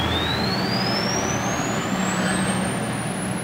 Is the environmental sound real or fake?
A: real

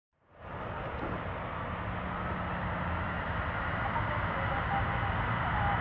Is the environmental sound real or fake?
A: real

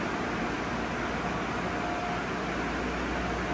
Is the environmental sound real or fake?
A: real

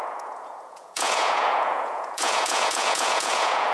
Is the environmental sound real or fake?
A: fake